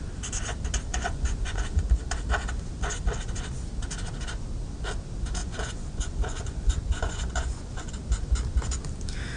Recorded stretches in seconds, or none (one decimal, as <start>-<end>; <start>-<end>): 0.0-0.9; 1.8-5.4; 7.9-9.4

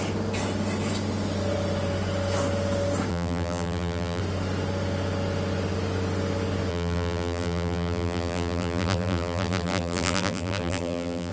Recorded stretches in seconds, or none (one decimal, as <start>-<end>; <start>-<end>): 0.0-3.1; 4.2-6.7

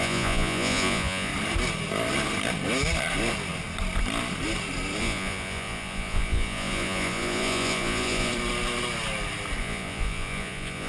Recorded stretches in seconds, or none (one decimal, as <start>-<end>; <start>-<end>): 1.3-5.0; 8.3-9.6

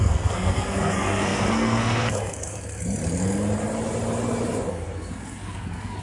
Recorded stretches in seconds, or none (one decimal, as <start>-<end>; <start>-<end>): 2.8-4.7

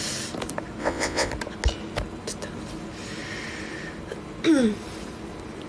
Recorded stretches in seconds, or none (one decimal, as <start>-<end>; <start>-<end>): 0.0-0.8; 1.3-5.7

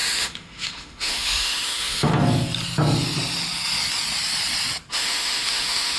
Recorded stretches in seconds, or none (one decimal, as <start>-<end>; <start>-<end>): 2.1-4.9

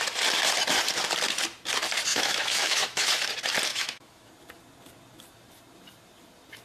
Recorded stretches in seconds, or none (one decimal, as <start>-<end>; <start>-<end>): 0.0-2.1; 3.1-3.7; 4.3-6.6